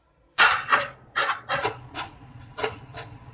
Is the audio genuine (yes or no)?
no